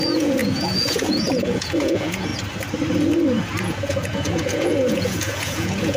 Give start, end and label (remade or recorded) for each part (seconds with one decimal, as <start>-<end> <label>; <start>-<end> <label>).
0.0-2.3 remade; 2.3-3.6 recorded; 3.6-6.0 remade